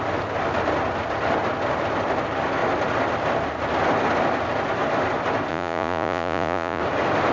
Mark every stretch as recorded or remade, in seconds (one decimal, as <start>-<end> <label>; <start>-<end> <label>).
0.0-5.5 recorded; 5.5-6.8 remade; 6.8-7.3 recorded